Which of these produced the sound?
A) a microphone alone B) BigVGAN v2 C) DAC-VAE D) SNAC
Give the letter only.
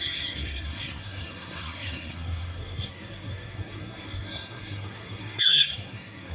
D